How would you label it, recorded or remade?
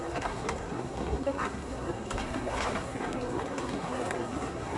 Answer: remade